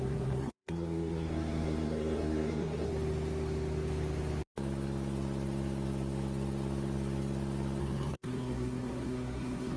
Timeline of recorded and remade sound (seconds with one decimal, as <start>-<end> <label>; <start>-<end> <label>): 0.0-2.9 remade; 2.9-7.8 recorded; 7.8-9.8 remade